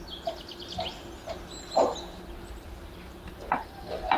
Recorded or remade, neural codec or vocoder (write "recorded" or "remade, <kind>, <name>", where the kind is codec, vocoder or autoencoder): recorded